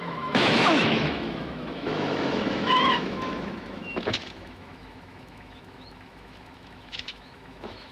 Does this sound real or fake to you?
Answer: fake